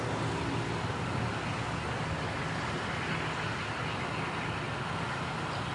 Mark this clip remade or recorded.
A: recorded